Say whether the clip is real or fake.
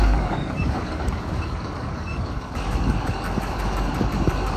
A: fake